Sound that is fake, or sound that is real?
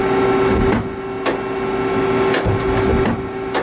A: real